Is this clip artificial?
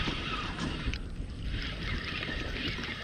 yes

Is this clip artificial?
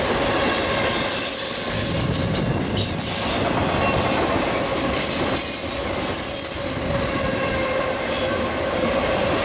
no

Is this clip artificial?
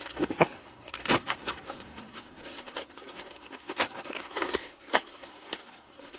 yes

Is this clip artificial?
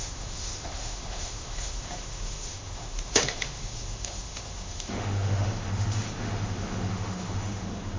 yes